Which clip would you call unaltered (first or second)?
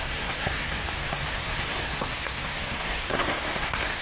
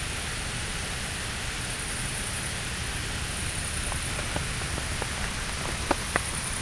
second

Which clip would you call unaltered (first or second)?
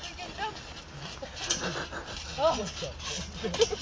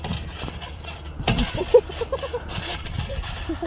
first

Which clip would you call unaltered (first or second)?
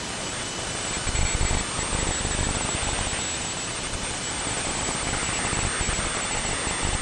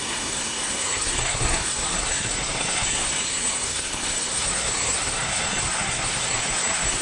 first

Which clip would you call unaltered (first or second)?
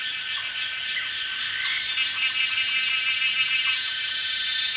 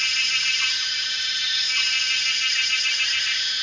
first